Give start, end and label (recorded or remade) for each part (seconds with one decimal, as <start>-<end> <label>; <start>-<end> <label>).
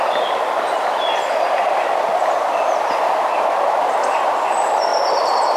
0.0-5.6 recorded